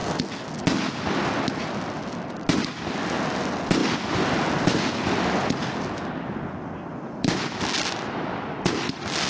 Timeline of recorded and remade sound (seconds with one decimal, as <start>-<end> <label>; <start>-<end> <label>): 0.0-9.3 recorded